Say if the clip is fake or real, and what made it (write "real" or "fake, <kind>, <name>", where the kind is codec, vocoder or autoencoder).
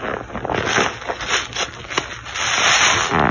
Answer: real